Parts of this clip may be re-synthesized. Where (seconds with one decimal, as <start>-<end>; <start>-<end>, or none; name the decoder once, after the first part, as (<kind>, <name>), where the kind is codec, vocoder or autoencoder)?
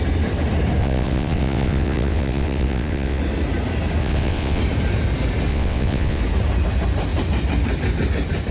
0.8-3.2 (vocoder, WaveNeXt); 4.0-4.6; 5.5-6.2